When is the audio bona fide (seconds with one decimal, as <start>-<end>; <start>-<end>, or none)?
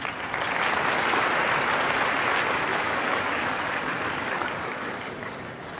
0.0-2.7; 5.1-5.8